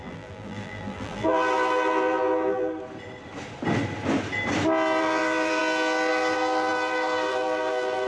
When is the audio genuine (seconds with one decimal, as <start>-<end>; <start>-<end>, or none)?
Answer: 2.7-5.0; 5.6-6.1